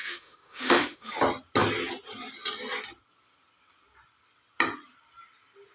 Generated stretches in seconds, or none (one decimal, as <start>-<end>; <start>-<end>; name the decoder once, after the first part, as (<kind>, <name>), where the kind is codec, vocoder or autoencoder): 0.0-1.2 (autoencoder, DAC-VAE)